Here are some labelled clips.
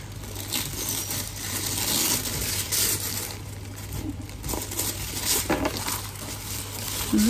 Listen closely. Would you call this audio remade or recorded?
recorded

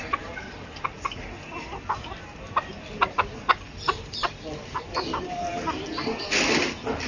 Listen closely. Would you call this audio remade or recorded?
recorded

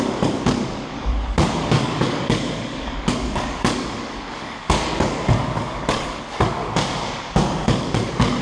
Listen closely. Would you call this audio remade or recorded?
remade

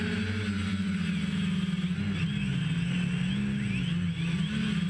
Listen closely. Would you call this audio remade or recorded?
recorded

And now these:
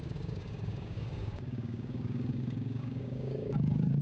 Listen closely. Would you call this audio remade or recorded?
remade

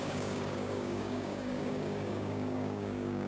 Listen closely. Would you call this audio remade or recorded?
remade